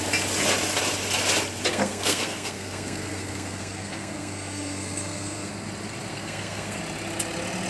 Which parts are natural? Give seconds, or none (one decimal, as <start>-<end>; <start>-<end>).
0.0-1.7; 5.5-6.1; 6.8-7.7